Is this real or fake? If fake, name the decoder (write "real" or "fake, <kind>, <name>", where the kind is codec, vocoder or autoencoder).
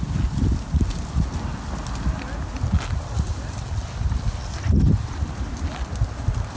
real